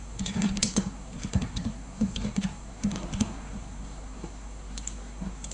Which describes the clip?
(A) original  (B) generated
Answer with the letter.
B